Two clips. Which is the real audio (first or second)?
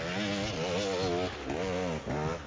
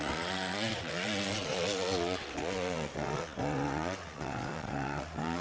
first